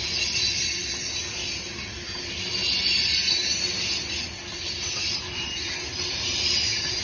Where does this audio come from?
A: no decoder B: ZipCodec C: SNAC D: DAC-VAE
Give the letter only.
A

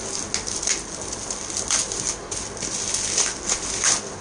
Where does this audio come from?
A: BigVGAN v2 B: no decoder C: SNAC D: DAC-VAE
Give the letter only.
B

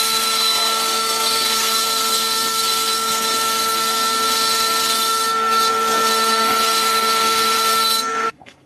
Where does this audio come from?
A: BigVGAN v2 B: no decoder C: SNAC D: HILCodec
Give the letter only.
C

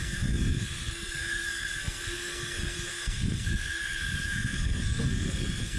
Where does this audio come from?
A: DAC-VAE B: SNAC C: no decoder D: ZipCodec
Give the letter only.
B